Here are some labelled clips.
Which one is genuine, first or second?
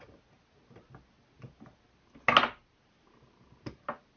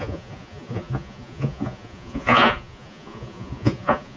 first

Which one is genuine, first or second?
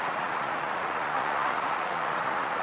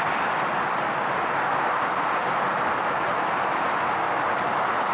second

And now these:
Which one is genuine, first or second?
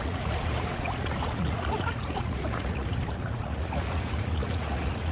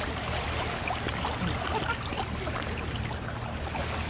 second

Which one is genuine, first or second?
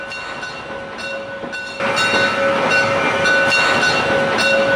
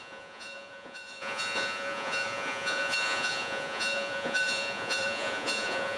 first